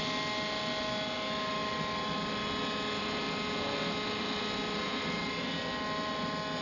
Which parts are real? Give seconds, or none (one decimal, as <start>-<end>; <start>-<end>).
0.0-6.6